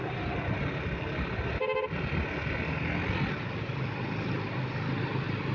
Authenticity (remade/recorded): recorded